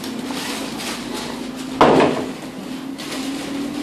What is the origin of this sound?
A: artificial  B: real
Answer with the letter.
B